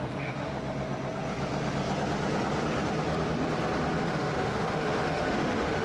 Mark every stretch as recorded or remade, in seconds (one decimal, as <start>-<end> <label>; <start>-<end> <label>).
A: 0.0-0.5 remade; 0.5-4.0 recorded; 4.0-5.8 remade